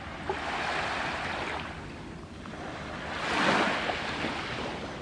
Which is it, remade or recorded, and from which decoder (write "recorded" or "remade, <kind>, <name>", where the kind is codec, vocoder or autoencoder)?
recorded